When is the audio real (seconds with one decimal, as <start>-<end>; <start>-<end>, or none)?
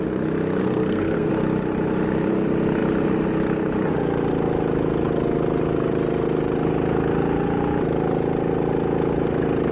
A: 0.0-0.6; 1.3-9.7